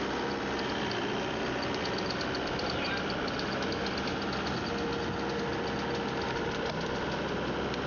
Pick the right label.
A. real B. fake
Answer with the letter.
A